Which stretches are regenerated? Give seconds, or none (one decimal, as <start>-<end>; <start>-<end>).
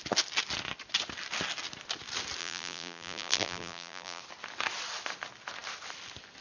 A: 2.4-4.2